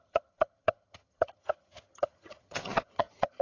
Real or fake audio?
fake